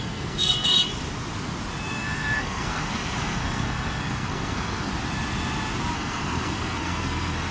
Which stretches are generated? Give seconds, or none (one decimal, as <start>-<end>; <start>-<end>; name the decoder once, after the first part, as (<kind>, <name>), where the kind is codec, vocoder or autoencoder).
0.0-0.9 (codec, SNAC); 1.9-4.9; 5.9-7.5